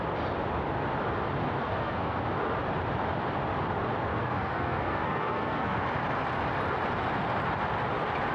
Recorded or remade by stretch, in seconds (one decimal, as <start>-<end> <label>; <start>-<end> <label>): 0.0-1.6 recorded; 1.6-2.2 remade; 2.2-4.1 recorded; 4.1-5.8 remade; 5.8-8.3 recorded